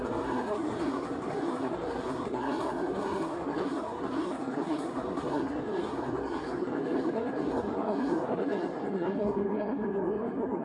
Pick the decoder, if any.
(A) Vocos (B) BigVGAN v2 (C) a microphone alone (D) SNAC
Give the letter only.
D